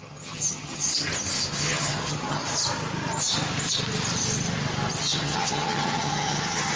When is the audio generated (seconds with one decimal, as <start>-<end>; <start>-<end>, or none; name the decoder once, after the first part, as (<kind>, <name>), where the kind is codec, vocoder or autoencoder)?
0.0-0.9 (vocoder, HiFi-GAN); 1.5-2.4; 5.0-6.8